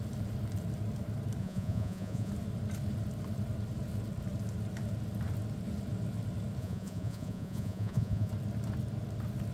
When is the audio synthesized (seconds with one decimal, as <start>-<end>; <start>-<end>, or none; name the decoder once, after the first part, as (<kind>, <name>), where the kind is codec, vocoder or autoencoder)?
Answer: 1.4-2.3 (vocoder, Vocos); 6.6-8.3